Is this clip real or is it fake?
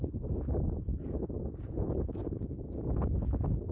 real